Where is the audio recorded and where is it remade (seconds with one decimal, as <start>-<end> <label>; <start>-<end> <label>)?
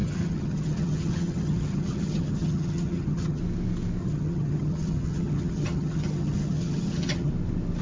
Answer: 0.0-3.4 remade; 3.4-4.0 recorded; 4.0-7.3 remade; 7.3-7.8 recorded